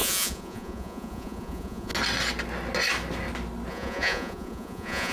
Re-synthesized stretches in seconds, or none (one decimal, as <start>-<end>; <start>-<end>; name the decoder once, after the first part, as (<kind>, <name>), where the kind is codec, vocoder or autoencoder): 0.0-1.9 (vocoder, Vocos); 3.7-5.1